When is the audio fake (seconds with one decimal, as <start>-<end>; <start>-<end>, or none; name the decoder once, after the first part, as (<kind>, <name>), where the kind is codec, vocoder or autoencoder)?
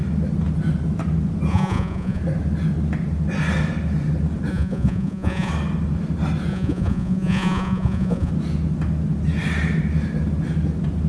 1.5-2.2 (vocoder, Vocos); 4.5-5.5; 6.5-8.3